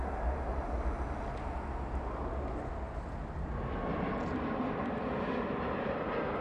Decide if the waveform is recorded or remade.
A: recorded